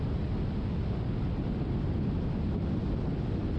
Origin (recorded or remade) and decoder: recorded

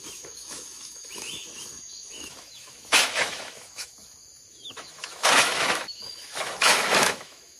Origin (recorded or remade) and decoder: remade, autoencoder, DAC-VAE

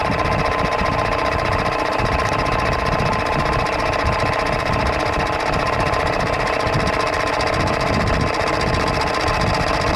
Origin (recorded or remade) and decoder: recorded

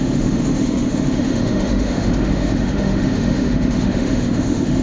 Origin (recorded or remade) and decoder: remade, autoencoder, DAC-VAE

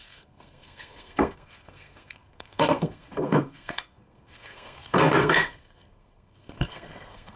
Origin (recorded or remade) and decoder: remade, codec, SNAC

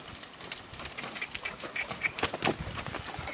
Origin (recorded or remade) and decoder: recorded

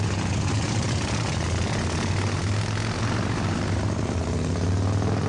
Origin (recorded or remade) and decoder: recorded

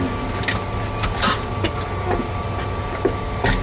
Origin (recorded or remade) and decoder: recorded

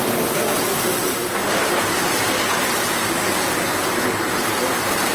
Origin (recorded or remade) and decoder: recorded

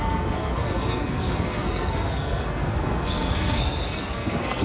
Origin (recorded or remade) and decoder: remade, codec, SNAC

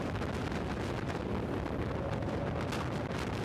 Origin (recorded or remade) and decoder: recorded